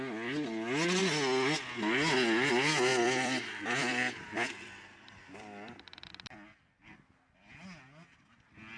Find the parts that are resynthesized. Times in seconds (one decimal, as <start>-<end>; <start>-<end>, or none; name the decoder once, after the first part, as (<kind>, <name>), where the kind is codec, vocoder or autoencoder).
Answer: 2.9-6.1 (vocoder, BigVGAN v2)